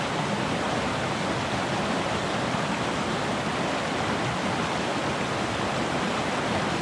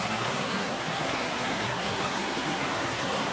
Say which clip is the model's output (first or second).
second